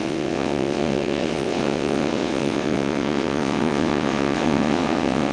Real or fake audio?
fake